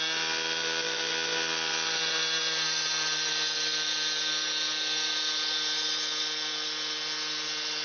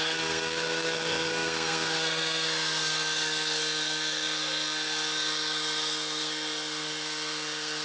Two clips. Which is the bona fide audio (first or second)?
first